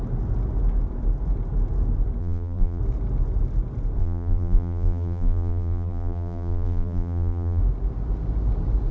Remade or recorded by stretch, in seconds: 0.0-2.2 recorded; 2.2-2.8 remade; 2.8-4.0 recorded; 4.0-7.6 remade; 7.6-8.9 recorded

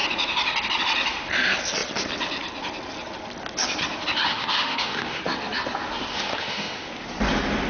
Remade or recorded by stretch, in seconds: 0.0-4.3 recorded; 4.3-5.2 remade; 5.2-6.1 recorded; 6.1-6.9 remade; 6.9-7.7 recorded

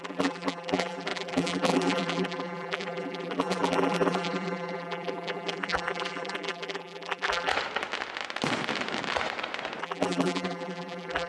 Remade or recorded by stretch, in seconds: 0.0-7.5 remade; 7.5-9.8 recorded; 9.8-11.3 remade

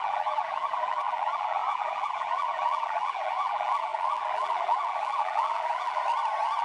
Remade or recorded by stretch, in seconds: 0.0-6.0 remade; 6.0-6.6 recorded

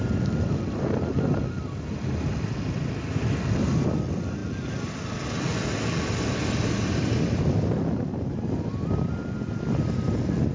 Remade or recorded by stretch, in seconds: 0.0-10.5 recorded